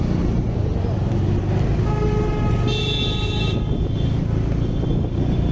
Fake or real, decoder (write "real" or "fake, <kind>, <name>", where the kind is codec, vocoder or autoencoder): real